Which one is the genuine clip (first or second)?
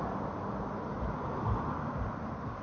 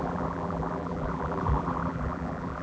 first